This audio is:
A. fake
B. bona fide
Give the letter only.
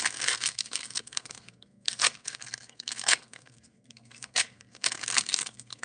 A